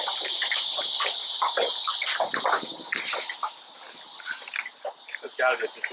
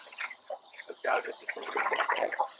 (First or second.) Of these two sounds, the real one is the first